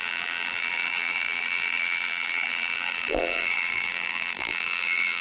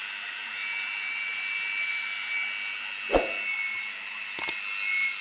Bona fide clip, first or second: second